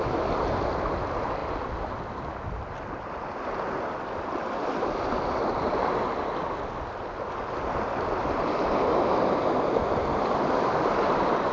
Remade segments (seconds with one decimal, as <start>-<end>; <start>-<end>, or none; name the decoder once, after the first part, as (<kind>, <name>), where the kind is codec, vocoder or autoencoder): none